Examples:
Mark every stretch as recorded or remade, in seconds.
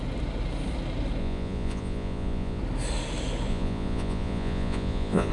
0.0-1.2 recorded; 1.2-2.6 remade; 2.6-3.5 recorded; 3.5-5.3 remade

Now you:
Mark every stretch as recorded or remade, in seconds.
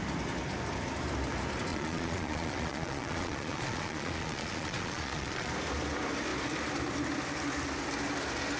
0.0-1.7 recorded; 1.7-5.5 remade; 5.5-8.6 recorded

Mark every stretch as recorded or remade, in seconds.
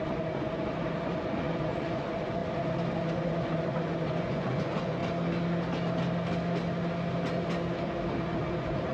0.0-2.4 remade; 2.4-3.1 recorded; 3.1-5.0 remade; 5.0-8.2 recorded; 8.2-8.9 remade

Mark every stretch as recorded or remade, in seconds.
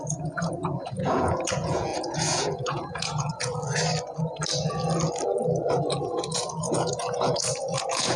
0.0-3.5 remade; 3.5-6.0 recorded; 6.0-8.2 remade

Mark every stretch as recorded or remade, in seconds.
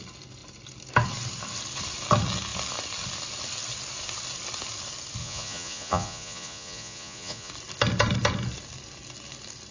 0.0-5.2 recorded; 5.2-7.5 remade; 7.5-9.7 recorded